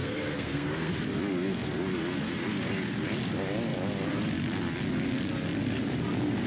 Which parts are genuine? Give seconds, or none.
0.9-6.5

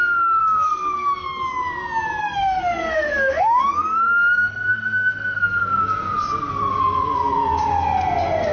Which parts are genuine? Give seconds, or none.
0.0-0.4; 1.1-2.2; 5.8-8.5

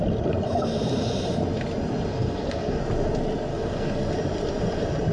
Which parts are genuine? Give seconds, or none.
0.0-2.1; 2.8-3.5; 4.0-5.1